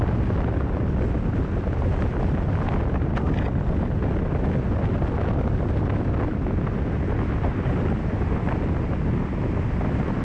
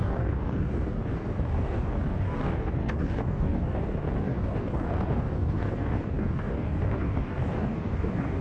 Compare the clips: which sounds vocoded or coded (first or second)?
second